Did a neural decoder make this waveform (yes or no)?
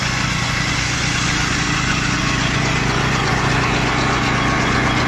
yes